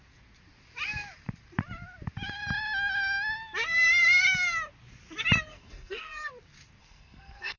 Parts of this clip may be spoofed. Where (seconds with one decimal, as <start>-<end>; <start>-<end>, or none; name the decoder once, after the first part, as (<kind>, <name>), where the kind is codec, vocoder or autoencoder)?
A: 5.5-6.3 (codec, SNAC); 6.8-7.6